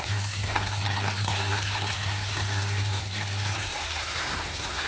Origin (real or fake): fake